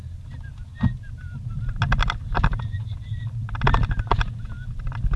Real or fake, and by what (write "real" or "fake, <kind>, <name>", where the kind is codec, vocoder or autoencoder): real